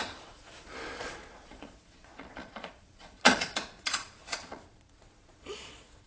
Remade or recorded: remade